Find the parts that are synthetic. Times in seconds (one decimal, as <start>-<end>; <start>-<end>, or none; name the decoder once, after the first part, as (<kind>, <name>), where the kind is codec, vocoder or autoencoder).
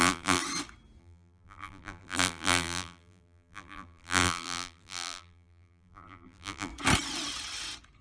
0.0-0.4 (vocoder, BigVGAN v2); 1.0-6.7